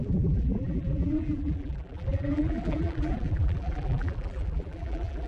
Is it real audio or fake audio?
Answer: fake